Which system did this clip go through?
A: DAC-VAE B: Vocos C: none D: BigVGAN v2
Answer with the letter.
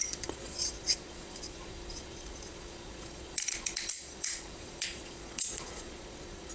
B